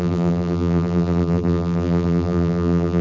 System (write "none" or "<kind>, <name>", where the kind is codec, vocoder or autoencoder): vocoder, BigVGAN v2